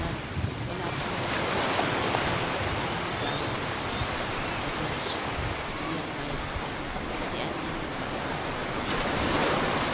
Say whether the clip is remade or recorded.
recorded